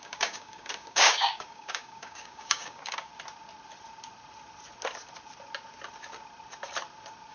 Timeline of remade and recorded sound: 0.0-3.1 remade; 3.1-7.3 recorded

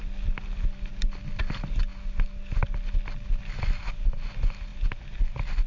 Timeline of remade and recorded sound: 0.0-5.7 recorded

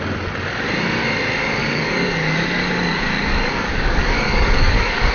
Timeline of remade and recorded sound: 0.0-1.6 recorded; 1.6-5.1 remade

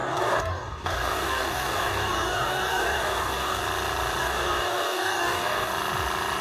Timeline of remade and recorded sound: 0.0-3.6 remade; 3.6-4.2 recorded; 4.2-5.7 remade; 5.7-6.4 recorded

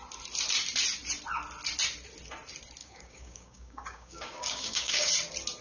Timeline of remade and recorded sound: 0.0-2.8 recorded; 2.8-5.1 remade; 5.1-5.6 recorded

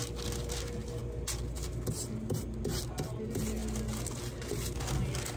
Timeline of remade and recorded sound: 0.0-5.4 recorded